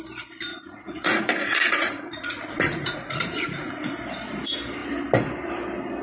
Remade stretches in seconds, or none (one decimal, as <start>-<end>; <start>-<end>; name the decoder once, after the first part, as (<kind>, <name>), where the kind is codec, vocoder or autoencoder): 0.5-3.9 (vocoder, Vocos)